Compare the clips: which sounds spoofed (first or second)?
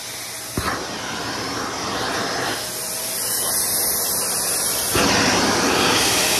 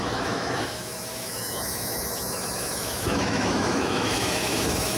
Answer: second